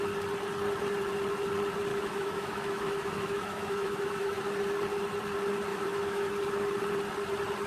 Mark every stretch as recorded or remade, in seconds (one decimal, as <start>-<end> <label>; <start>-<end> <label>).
0.0-1.9 recorded; 1.9-4.4 remade; 4.4-5.7 recorded; 5.7-6.3 remade; 6.3-7.7 recorded